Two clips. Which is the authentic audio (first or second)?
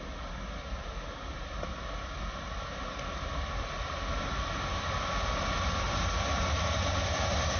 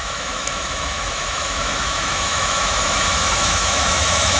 first